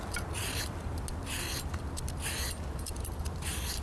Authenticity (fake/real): real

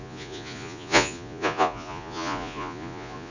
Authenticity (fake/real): fake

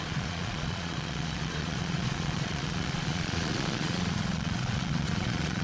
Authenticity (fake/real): fake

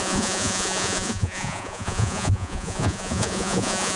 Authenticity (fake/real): fake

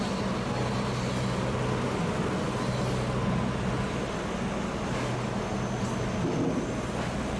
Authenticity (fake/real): real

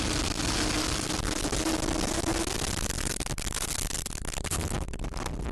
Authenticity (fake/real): real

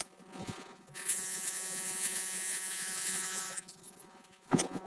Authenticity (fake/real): fake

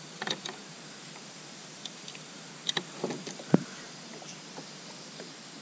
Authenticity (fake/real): real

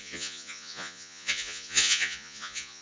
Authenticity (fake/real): fake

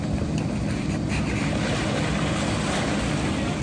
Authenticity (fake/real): real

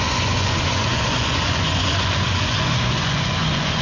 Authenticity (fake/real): fake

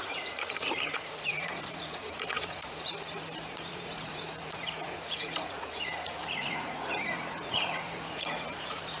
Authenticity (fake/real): fake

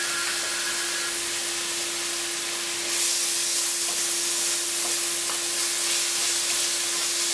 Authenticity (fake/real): real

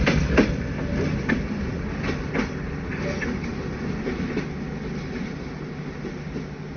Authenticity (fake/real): real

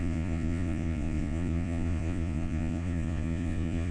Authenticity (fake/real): fake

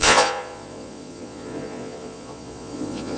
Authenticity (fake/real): fake